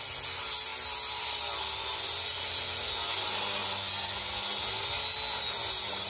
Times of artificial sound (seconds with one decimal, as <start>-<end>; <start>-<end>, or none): none